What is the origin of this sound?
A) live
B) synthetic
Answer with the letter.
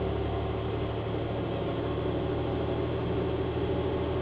A